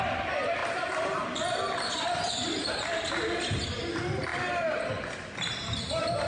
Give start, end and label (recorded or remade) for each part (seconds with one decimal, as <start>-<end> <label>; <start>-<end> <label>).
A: 0.0-0.6 recorded; 0.6-2.7 remade; 2.7-6.3 recorded